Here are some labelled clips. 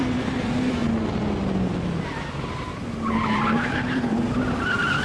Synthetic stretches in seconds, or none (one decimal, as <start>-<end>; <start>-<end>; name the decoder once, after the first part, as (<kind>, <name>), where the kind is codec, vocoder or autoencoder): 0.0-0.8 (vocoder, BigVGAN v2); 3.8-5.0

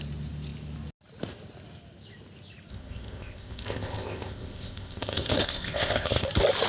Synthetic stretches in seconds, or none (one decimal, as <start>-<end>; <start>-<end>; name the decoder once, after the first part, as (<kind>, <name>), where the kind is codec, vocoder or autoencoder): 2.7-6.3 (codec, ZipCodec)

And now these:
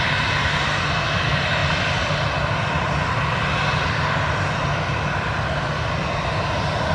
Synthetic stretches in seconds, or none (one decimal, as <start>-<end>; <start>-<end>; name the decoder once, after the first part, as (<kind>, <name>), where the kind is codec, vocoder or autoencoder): none

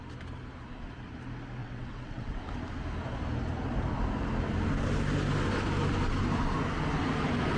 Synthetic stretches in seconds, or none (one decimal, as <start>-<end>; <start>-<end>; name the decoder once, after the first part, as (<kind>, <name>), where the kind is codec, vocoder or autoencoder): 1.6-2.4 (vocoder, WaveNeXt)

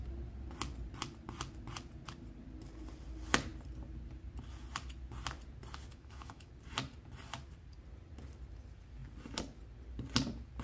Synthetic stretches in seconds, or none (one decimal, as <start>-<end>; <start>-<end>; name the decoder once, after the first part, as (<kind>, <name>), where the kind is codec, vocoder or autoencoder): 5.9-6.5 (autoencoder, DAC-VAE)

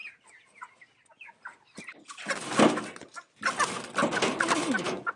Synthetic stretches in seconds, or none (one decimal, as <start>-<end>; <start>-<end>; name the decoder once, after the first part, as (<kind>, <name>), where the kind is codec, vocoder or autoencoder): none

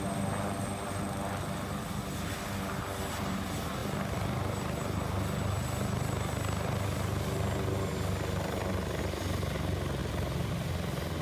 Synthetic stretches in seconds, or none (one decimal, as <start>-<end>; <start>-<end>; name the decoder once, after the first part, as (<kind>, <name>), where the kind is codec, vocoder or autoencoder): 10.0-10.5 (vocoder, BigVGAN v2)

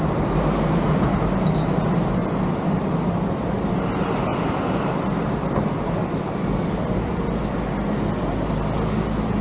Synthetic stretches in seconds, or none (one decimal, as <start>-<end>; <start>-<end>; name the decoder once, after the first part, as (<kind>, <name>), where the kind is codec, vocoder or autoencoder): 2.2-3.7 (vocoder, BigVGAN v2); 4.3-7.4